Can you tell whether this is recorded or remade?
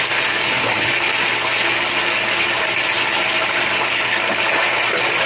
recorded